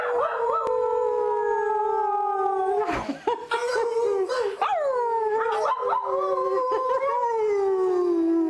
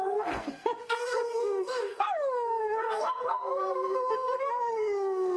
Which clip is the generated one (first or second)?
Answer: second